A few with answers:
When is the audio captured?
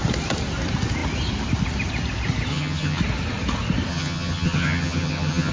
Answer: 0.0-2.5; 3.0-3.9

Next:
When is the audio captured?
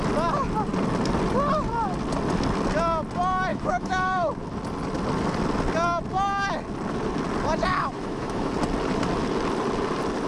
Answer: 0.0-3.5; 4.3-7.7; 8.5-10.3